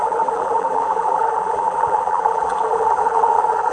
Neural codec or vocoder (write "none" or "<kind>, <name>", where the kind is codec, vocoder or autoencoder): vocoder, BigVGAN v2